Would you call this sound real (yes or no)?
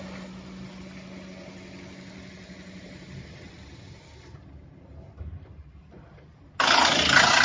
yes